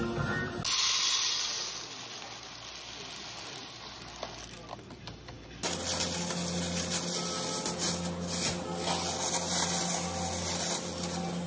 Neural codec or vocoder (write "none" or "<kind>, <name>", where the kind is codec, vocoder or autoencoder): none